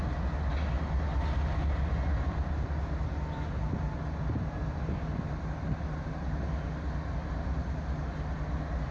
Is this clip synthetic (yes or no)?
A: no